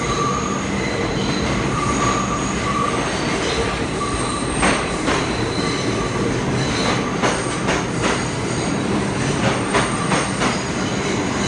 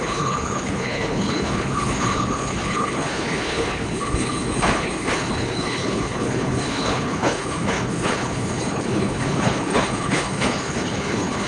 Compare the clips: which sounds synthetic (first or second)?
second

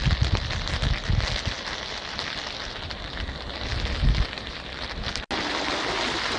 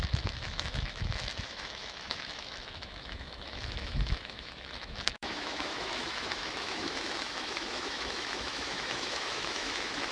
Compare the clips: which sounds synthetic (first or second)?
second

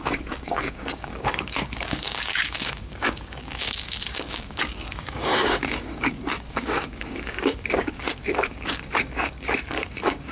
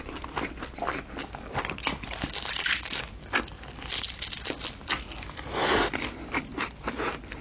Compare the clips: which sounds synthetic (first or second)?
first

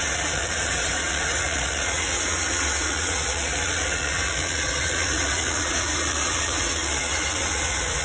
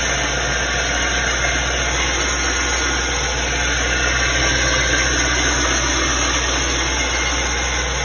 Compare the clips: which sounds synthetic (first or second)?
first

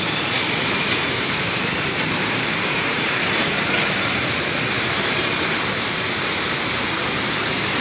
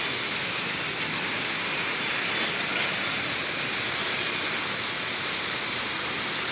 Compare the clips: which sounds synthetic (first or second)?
first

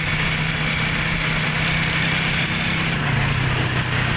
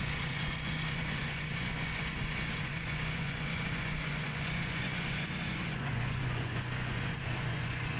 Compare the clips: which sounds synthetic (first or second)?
second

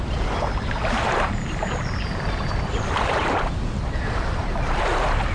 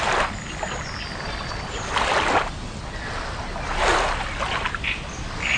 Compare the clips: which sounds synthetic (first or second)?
first